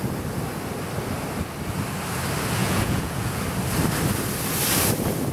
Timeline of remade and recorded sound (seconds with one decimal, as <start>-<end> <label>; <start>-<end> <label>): 0.0-2.6 recorded; 2.6-3.4 remade; 3.4-5.3 recorded